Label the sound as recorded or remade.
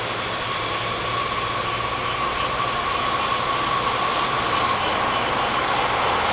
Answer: recorded